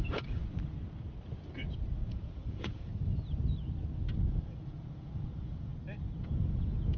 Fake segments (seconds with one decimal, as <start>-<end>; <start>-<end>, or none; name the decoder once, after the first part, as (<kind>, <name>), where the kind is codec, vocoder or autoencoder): 0.0-0.4 (vocoder, Vocos); 2.1-2.9; 4.2-5.7; 6.2-7.0